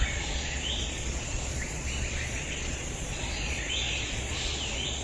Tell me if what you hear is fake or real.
fake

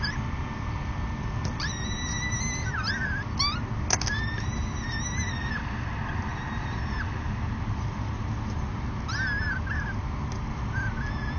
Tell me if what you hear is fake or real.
real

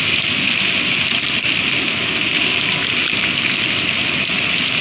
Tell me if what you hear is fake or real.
real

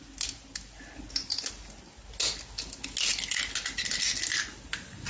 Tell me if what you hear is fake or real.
real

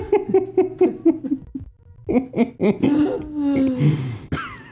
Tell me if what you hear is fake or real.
real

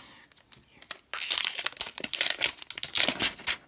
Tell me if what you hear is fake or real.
real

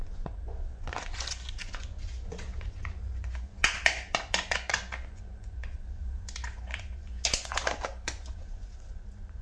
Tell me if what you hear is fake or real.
fake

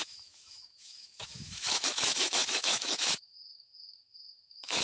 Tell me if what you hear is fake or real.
fake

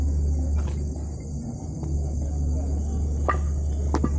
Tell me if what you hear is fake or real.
real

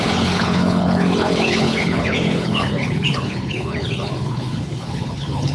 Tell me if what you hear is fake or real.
fake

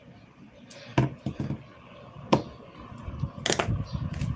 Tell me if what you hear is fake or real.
real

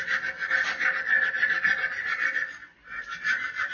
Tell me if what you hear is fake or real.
real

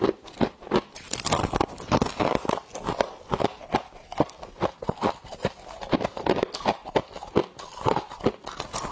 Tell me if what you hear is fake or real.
real